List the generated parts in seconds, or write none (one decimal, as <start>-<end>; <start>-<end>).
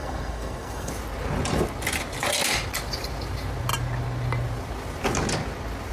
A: 0.0-0.9